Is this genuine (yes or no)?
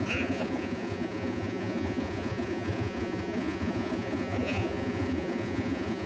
no